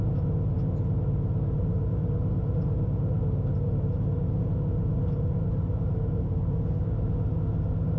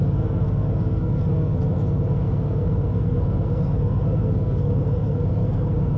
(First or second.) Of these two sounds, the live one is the first